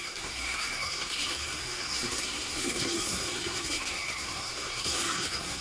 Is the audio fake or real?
fake